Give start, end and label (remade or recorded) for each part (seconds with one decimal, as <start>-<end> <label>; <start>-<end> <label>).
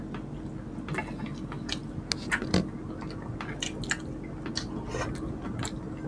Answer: 0.0-6.1 recorded